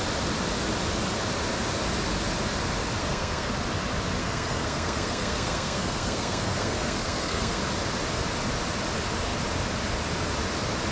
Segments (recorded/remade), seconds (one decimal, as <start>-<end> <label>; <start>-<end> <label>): 0.0-3.0 recorded; 3.0-3.5 remade; 3.5-4.2 recorded; 4.2-7.6 remade; 7.6-10.9 recorded